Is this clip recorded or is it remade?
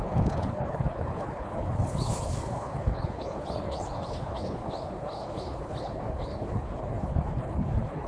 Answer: remade